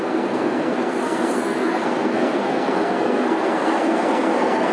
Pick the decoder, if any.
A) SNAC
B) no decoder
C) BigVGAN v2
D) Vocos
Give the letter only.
A